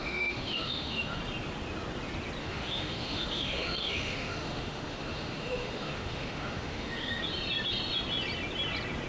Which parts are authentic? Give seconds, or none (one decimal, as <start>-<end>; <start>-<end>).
1.2-2.4; 7.2-9.1